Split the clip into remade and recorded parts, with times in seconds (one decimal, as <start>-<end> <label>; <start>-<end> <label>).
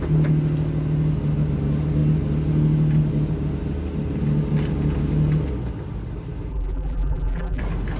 0.0-6.5 recorded; 6.5-7.6 remade; 7.6-8.0 recorded